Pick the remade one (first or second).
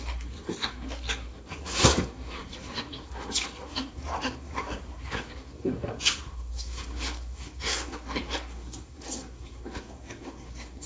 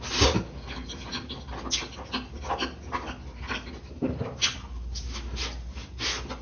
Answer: first